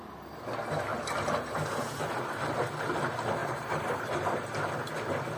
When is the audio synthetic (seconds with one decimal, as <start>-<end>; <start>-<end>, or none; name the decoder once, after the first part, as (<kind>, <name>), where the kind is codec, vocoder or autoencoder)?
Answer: 0.9-2.0 (vocoder, BigVGAN v2); 3.4-4.7